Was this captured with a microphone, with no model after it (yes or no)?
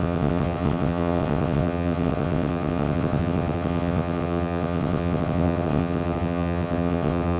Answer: no